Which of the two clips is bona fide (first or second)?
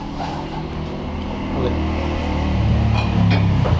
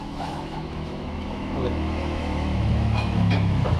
first